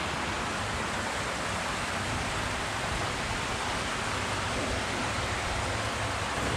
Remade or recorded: recorded